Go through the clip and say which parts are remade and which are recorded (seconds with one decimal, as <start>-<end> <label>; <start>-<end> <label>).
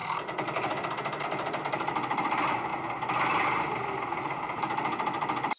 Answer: 0.0-5.6 recorded